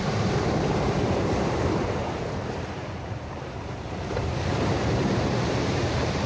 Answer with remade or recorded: remade